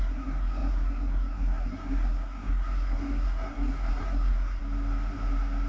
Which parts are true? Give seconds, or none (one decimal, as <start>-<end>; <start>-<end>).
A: 4.6-5.7